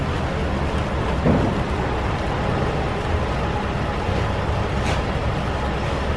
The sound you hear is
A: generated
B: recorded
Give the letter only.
B